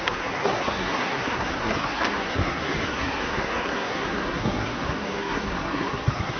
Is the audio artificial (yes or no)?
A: yes